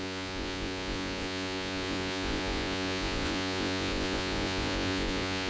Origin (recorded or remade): remade